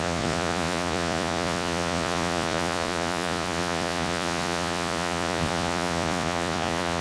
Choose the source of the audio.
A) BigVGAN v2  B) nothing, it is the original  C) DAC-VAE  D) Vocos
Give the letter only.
D